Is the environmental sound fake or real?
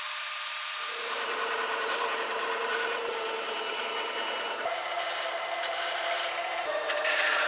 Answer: fake